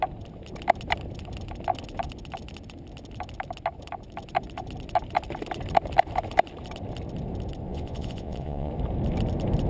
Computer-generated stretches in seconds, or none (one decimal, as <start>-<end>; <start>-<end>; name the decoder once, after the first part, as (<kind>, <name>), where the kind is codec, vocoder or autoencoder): 7.7-8.7 (vocoder, Vocos)